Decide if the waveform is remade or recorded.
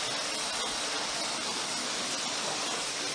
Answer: recorded